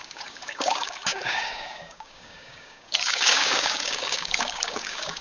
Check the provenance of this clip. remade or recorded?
remade